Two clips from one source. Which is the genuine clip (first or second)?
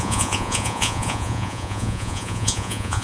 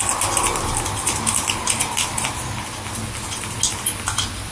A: second